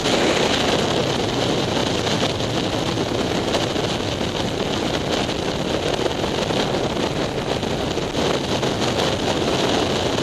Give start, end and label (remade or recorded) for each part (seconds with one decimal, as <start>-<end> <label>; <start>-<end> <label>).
0.0-10.2 recorded